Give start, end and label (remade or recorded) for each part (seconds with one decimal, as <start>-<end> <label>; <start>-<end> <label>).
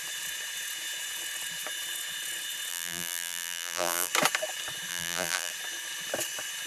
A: 0.0-2.7 recorded; 2.7-4.1 remade; 4.1-4.9 recorded; 4.9-5.5 remade; 5.5-6.7 recorded